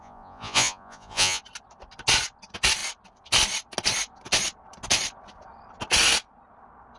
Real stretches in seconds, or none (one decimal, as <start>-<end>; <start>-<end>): 1.4-7.0